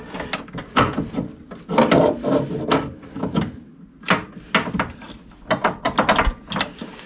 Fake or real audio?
real